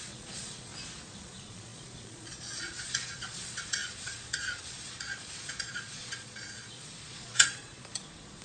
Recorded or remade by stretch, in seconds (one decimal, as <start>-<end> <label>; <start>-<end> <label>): 0.0-0.7 remade; 0.7-1.2 recorded; 1.2-8.4 remade